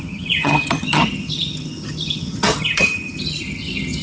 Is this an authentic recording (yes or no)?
no